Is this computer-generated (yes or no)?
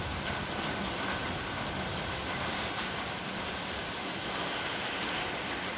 yes